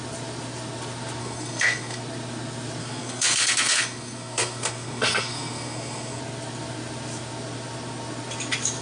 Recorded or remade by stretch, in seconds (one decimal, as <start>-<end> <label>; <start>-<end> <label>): 0.0-1.2 recorded; 1.2-2.0 remade; 2.0-2.8 recorded; 2.8-6.2 remade; 6.2-8.8 recorded